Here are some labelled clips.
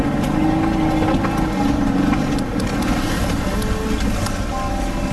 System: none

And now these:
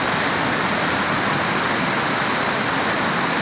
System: none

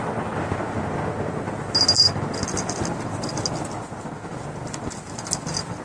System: none